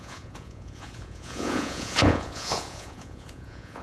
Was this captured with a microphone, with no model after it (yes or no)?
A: no